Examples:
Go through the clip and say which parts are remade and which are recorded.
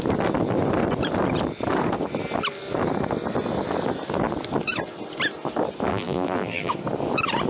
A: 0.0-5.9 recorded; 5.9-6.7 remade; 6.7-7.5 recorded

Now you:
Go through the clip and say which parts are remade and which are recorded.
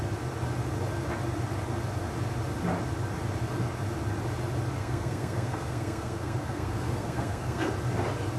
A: 0.0-4.8 recorded; 4.8-7.7 remade; 7.7-8.4 recorded